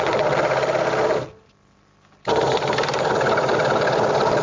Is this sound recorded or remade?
recorded